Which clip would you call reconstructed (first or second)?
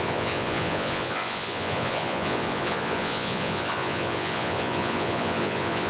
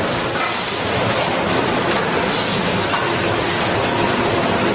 first